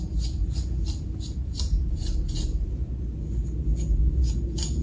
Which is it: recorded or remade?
recorded